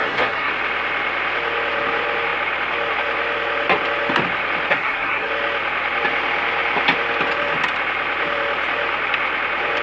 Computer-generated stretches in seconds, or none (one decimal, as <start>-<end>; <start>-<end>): 0.0-0.5; 4.7-5.3

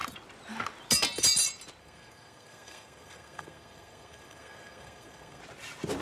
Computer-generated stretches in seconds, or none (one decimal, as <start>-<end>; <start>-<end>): 1.8-5.4

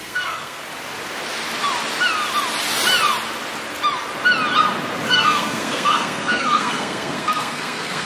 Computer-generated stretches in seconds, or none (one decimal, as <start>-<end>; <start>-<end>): 0.0-0.6; 5.1-8.1

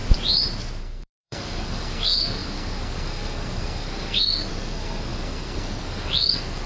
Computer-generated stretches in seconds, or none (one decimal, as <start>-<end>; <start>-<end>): 0.8-6.7